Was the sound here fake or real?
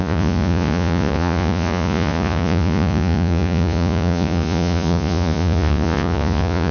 fake